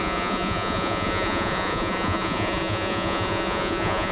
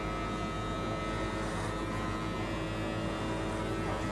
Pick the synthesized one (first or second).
first